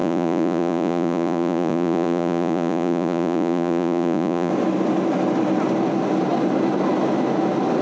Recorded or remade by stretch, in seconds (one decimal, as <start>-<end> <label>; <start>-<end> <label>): 0.0-4.5 remade; 4.5-7.8 recorded